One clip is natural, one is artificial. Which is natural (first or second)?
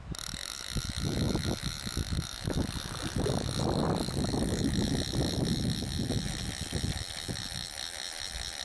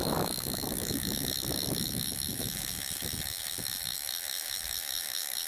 first